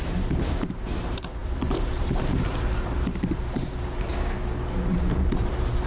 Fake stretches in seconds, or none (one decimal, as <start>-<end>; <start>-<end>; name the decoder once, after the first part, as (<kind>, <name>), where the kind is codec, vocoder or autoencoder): 0.0-4.1 (vocoder, BigVGAN v2); 4.9-5.9